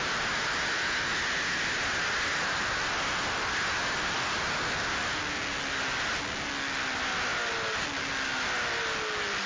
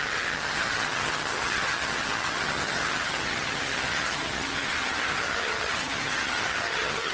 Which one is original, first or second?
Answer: first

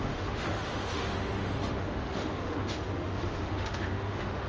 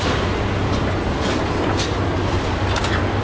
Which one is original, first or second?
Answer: second